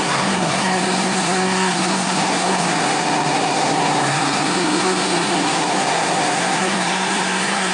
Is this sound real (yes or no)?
no